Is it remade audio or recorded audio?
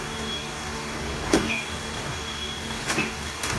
remade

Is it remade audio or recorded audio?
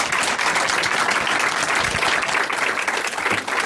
recorded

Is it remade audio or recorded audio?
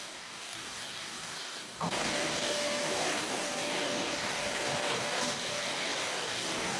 remade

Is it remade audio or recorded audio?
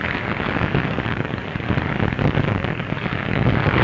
remade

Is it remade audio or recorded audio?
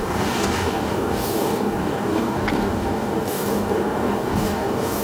remade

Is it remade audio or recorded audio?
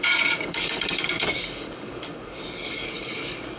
remade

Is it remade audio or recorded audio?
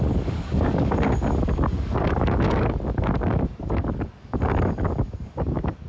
remade